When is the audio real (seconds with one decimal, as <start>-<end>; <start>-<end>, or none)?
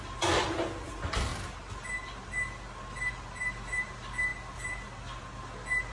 0.0-5.9